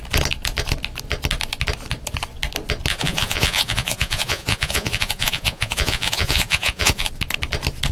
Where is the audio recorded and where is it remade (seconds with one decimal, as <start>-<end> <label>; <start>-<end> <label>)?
0.0-2.9 recorded; 2.9-7.1 remade; 7.1-7.9 recorded